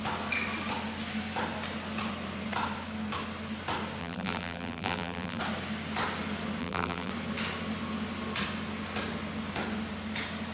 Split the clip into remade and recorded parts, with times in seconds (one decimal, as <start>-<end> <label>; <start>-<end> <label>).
0.0-4.0 recorded; 4.0-5.4 remade; 5.4-6.6 recorded; 6.6-7.1 remade; 7.1-10.5 recorded